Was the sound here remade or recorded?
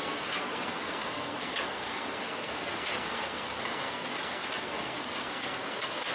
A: remade